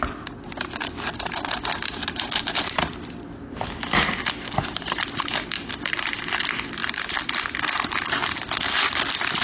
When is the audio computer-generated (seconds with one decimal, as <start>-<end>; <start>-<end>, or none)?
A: none